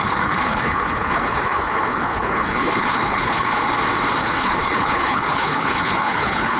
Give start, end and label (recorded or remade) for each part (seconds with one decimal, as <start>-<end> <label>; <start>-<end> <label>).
0.0-3.5 remade; 3.5-4.2 recorded; 4.2-6.6 remade